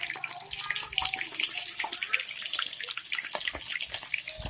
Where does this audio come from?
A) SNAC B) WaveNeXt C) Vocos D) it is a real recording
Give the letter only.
D